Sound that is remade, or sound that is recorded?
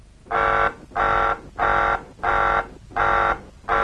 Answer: recorded